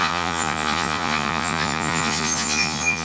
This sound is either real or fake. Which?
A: fake